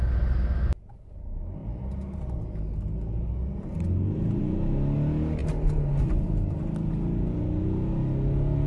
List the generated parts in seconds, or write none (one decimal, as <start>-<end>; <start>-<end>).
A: none